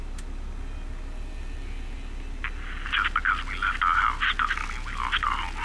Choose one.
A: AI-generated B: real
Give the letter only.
B